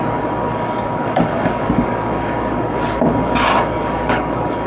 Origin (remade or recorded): remade